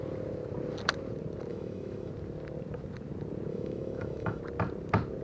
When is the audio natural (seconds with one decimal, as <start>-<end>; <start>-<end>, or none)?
0.0-1.5; 2.1-3.5; 4.4-5.2